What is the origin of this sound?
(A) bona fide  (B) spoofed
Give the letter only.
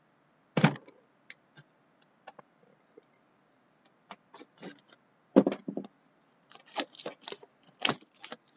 A